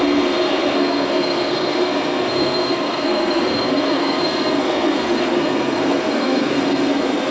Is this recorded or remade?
remade